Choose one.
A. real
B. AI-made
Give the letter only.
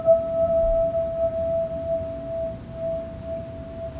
A